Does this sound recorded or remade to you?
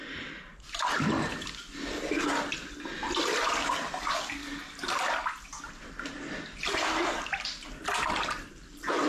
recorded